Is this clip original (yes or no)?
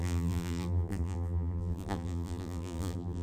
no